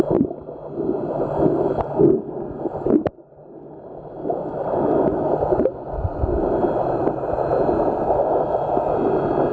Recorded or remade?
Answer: recorded